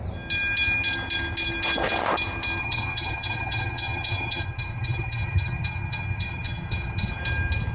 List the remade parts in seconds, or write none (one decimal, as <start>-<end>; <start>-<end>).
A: 2.6-7.2